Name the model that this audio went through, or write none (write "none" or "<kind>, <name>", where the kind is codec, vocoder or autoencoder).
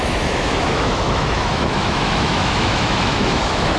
autoencoder, DAC-VAE